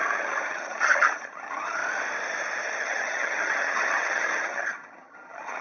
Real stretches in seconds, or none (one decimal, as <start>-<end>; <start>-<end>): 1.8-2.8